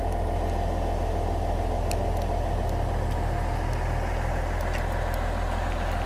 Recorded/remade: recorded